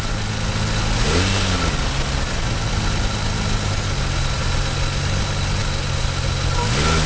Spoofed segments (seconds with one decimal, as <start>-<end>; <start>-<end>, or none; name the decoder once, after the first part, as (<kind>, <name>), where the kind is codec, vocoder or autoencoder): none